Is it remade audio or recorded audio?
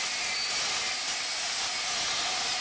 recorded